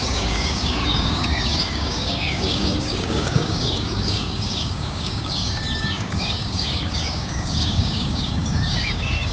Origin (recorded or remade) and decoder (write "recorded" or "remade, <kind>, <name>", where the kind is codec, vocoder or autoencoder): remade, codec, DAC